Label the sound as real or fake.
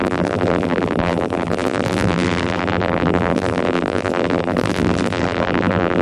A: fake